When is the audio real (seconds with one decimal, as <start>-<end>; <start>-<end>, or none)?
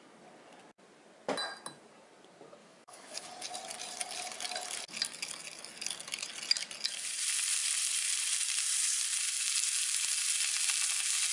0.0-2.6; 3.3-11.3